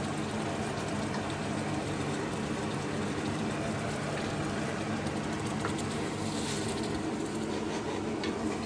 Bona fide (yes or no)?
no